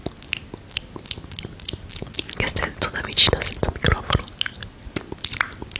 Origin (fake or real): real